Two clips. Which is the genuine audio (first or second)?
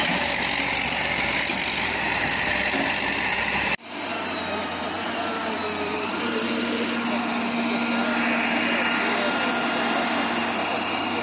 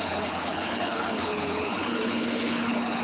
first